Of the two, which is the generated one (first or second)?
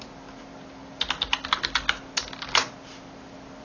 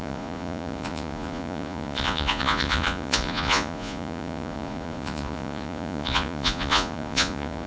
second